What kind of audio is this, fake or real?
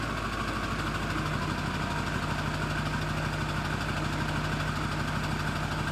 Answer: real